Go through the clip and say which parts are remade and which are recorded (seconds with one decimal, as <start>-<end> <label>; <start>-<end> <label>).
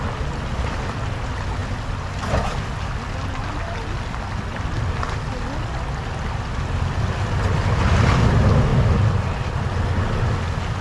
0.0-10.8 recorded